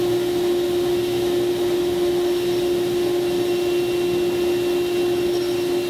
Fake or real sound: real